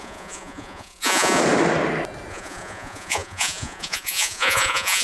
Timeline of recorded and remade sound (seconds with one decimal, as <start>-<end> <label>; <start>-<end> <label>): 0.0-1.4 remade; 1.4-2.3 recorded; 2.3-5.0 remade